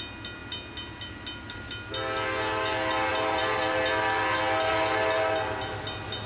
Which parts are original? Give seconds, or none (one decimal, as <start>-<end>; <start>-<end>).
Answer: 0.0-3.1; 3.9-6.3